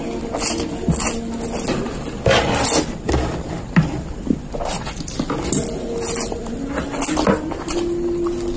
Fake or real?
real